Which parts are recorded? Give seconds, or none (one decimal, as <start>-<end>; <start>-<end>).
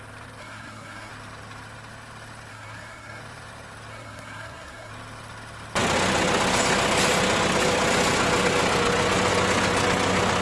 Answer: 0.0-0.4; 1.1-2.5; 3.2-3.9; 4.9-10.4